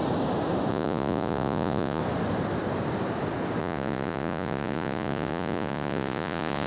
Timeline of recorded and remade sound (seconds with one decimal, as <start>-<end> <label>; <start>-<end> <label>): 0.0-0.7 recorded; 0.7-2.0 remade; 2.0-3.6 recorded; 3.6-6.7 remade